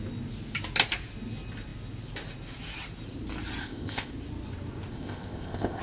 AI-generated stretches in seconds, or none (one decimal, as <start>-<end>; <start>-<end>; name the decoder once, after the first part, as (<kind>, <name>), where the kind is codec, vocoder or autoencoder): 3.6-4.1 (codec, ZipCodec); 4.9-5.8